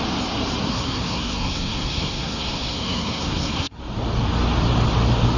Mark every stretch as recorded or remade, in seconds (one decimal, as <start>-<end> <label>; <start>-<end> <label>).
0.0-0.6 recorded; 0.6-3.8 remade; 3.8-5.4 recorded